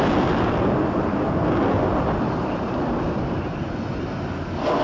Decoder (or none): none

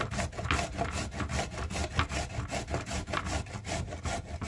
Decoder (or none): none